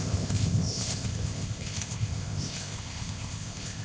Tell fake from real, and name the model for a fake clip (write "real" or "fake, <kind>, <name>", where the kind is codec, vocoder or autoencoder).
fake, codec, ZipCodec